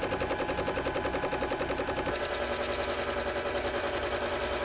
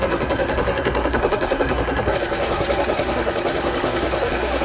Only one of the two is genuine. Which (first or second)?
first